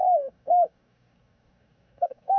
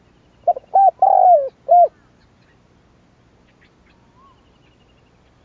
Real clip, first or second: second